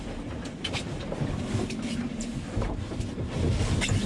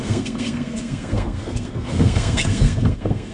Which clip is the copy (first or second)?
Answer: second